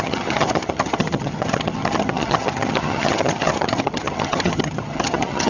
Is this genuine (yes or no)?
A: no